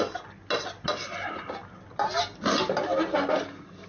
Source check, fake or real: real